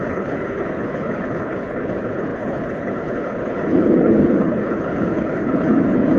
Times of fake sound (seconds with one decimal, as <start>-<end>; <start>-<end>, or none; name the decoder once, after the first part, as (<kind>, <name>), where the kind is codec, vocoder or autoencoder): 0.0-6.2 (codec, HILCodec)